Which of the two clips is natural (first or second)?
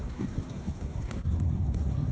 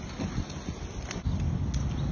second